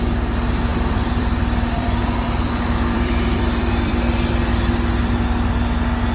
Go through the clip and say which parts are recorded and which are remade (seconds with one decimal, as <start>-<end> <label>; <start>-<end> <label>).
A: 0.0-0.7 recorded; 0.7-4.4 remade; 4.4-6.1 recorded